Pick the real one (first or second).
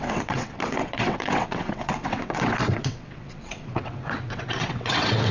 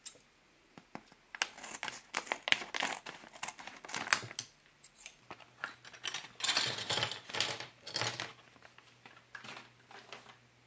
second